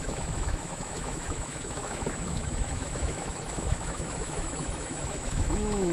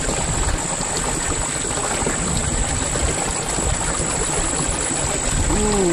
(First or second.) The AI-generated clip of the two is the first